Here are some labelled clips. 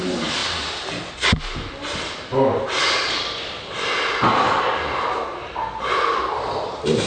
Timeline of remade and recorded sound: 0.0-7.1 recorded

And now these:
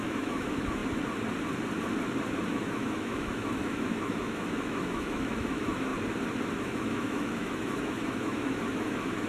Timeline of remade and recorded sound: 0.0-0.8 remade; 0.8-2.5 recorded; 2.5-5.9 remade; 5.9-6.6 recorded; 6.6-9.3 remade

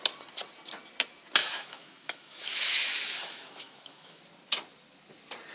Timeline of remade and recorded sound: 0.0-1.4 recorded; 1.4-4.2 remade; 4.2-5.5 recorded

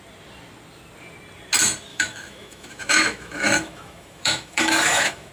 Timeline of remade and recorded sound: 0.0-1.9 recorded; 1.9-5.3 remade

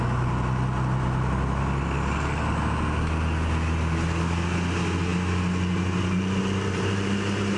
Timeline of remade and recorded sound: 0.0-7.6 recorded

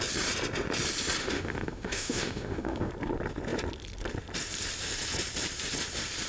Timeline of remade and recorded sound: 0.0-1.2 recorded; 1.2-2.9 remade; 2.9-6.3 recorded